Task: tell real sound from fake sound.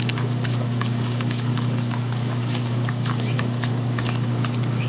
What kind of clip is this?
fake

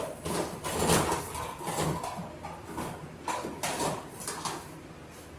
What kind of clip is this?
real